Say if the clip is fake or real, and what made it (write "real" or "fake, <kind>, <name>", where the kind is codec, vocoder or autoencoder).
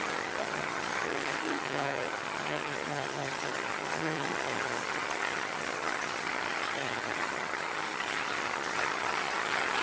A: fake, vocoder, HiFi-GAN